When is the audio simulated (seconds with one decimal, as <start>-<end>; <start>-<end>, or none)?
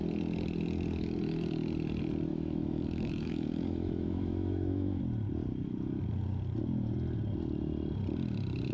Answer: 2.3-5.0